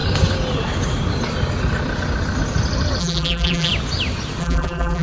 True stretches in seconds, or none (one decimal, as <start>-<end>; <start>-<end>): 0.0-3.0; 3.7-4.4